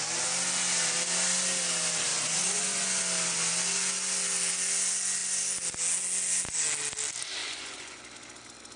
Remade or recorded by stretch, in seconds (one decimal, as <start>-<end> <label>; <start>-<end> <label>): 0.0-2.1 recorded; 2.1-3.0 remade; 3.0-7.4 recorded; 7.4-8.0 remade; 8.0-8.8 recorded